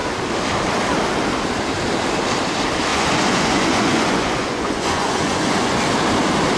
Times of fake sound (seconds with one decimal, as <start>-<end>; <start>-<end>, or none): 2.9-5.8